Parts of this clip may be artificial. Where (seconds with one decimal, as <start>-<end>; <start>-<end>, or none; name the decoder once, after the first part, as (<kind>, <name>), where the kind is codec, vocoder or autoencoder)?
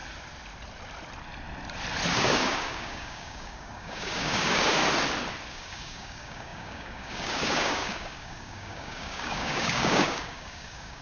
2.1-4.8 (codec, DAC); 5.5-11.0